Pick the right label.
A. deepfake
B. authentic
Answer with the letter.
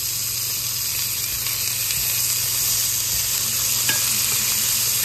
B